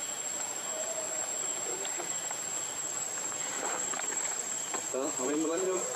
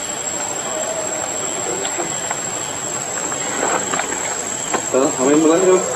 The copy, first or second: first